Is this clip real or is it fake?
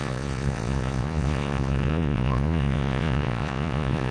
fake